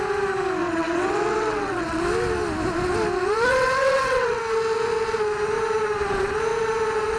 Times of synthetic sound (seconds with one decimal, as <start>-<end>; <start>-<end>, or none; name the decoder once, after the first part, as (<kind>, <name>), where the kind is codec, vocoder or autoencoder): 0.6-2.0 (vocoder, WaveNeXt); 3.5-4.4